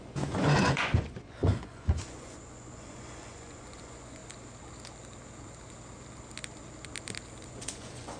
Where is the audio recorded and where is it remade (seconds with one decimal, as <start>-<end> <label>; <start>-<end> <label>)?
0.0-4.2 remade; 4.2-7.5 recorded; 7.5-8.2 remade